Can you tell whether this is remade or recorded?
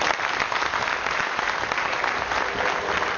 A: recorded